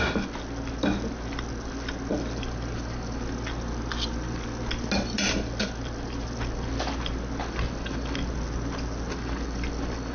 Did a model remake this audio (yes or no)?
no